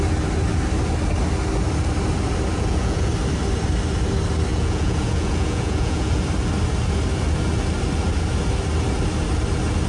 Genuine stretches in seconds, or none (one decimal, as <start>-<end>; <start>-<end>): 0.0-2.5; 3.1-4.5; 6.2-9.9